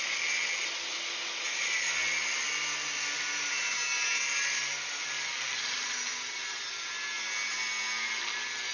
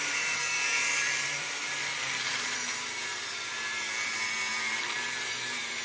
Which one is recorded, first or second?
first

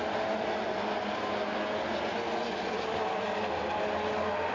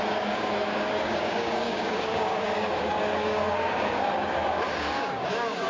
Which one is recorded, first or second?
first